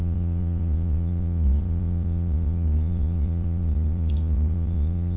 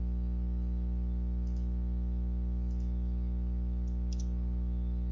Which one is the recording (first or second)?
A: second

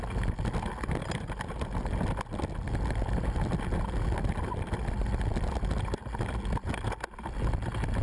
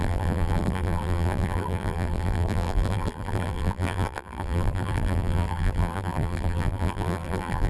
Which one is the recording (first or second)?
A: first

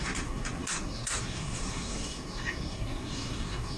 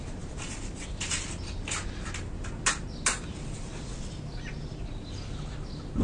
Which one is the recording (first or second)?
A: second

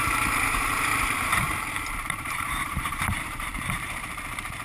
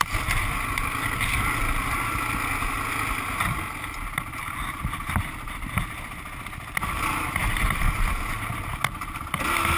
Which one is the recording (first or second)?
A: second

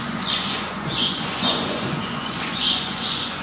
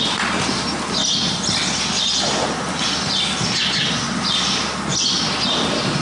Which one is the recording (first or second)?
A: second